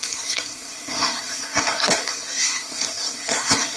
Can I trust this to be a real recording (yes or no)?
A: no